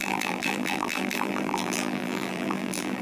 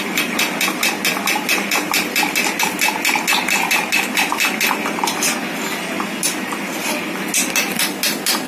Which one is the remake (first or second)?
first